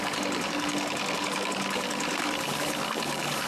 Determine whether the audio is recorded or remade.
remade